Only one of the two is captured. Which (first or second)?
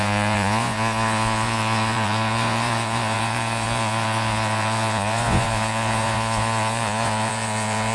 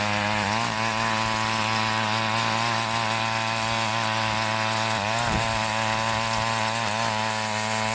second